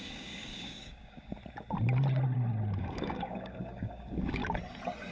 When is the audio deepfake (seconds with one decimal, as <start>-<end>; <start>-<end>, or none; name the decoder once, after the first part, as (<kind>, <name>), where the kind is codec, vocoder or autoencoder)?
0.0-1.4 (codec, DAC); 2.8-4.4